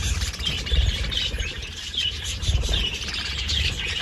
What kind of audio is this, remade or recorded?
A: remade